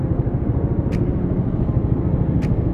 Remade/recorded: recorded